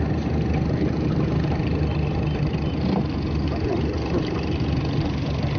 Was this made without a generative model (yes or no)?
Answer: yes